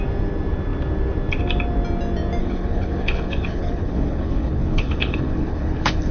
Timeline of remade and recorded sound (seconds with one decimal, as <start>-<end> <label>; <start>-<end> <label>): 0.0-2.4 recorded; 2.4-6.1 remade